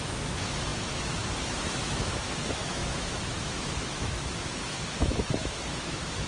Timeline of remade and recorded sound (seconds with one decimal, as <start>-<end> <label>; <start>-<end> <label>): 0.0-6.3 remade